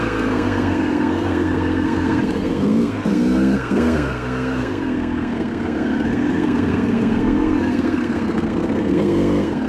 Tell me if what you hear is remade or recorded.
remade